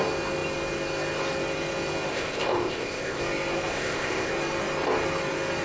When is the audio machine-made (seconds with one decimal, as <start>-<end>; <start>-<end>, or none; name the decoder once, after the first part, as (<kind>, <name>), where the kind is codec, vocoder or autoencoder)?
2.1-3.2 (codec, ZipCodec); 3.7-4.3